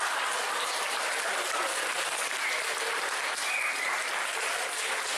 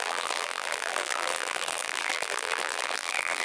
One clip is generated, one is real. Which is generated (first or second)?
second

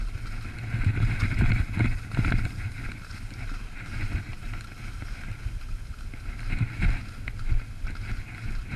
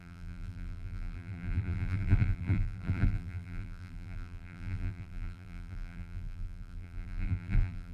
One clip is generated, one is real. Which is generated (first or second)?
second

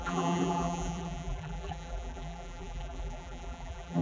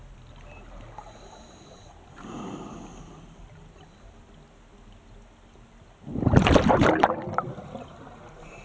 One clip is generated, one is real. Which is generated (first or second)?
first